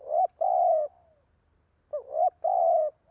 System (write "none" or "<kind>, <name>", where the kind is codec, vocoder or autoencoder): none